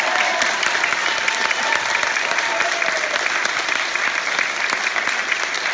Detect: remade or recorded recorded